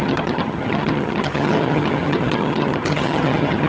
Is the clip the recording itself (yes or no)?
no